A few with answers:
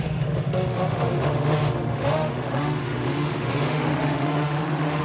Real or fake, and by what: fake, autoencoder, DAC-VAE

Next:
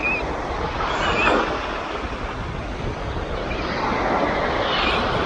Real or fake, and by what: real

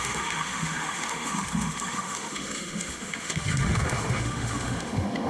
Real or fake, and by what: fake, autoencoder, DAC-VAE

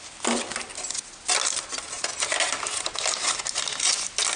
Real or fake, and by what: real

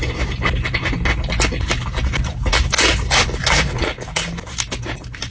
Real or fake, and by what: real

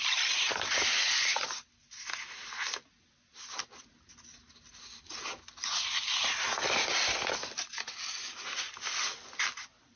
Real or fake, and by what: real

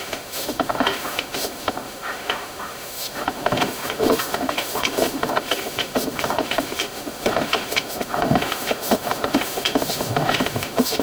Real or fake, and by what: fake, autoencoder, DAC-VAE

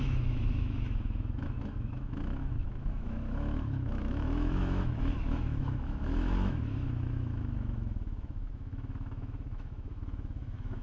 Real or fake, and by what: fake, autoencoder, DAC-VAE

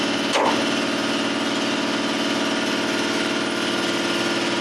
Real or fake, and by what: real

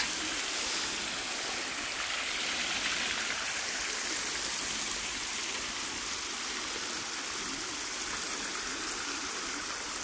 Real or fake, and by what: real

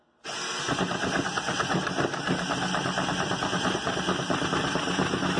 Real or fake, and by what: real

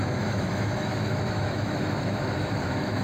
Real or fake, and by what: fake, autoencoder, DAC-VAE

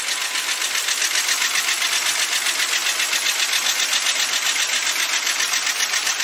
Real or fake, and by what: real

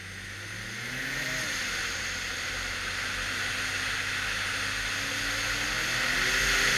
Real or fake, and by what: real